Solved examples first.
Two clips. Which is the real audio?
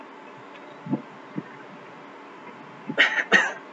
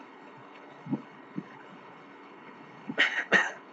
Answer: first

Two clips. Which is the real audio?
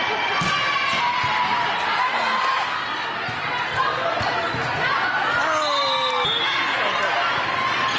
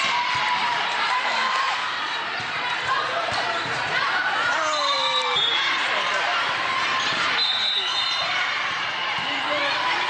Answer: first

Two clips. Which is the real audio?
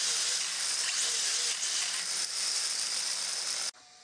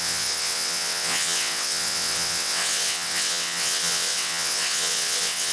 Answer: first